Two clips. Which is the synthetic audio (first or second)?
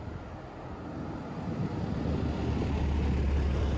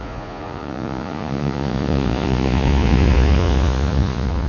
second